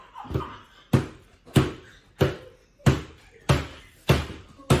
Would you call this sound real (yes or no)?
yes